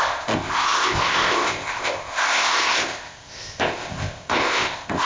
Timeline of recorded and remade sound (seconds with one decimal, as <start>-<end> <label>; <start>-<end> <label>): 0.0-5.0 remade